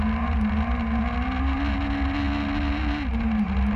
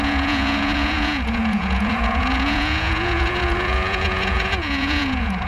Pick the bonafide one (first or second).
first